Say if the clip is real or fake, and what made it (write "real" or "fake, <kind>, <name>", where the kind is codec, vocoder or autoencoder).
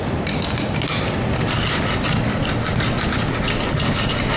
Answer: real